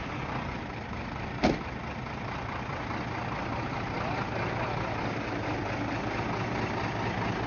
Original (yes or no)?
yes